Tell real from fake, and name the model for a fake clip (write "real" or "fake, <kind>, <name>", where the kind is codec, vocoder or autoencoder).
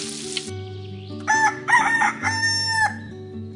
real